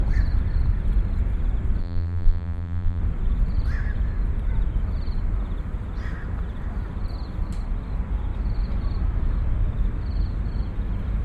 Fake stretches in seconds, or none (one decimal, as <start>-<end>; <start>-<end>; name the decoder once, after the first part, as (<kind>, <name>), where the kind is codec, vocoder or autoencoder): 1.8-3.0 (vocoder, BigVGAN v2)